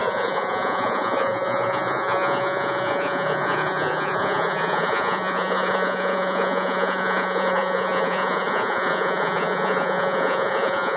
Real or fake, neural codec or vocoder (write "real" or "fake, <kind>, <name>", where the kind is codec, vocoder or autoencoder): fake, vocoder, Vocos